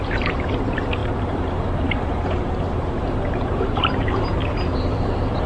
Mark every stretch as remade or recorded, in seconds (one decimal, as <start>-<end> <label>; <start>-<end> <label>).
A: 0.0-5.5 remade

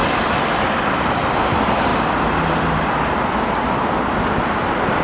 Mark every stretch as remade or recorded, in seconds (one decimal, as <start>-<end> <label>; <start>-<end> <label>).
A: 0.0-5.0 remade